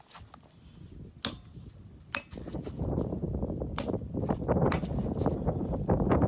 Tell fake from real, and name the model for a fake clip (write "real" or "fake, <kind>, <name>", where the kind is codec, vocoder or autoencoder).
real